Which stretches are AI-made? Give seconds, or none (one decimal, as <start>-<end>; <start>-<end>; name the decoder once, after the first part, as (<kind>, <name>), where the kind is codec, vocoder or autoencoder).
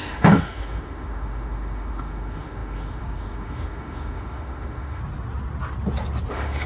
0.0-5.0 (autoencoder, DAC-VAE); 6.3-6.7